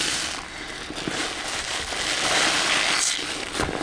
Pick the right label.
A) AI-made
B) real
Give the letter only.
B